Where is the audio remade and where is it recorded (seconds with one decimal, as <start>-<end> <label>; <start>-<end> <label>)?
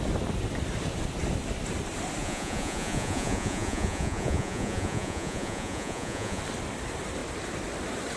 0.0-2.2 recorded; 2.2-6.4 remade; 6.4-8.2 recorded